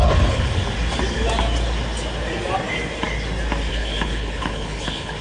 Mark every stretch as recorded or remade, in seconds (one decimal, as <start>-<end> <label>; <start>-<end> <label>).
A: 0.0-0.6 remade; 0.6-3.7 recorded; 3.7-5.2 remade